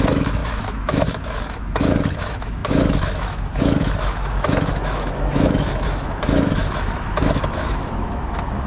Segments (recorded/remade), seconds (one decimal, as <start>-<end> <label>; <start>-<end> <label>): 0.0-8.7 remade